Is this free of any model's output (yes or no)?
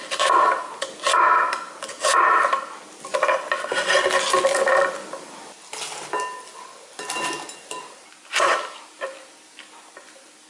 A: yes